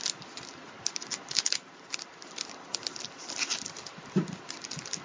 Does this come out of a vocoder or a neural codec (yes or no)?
no